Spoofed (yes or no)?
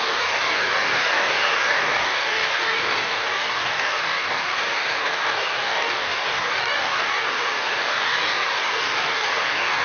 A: yes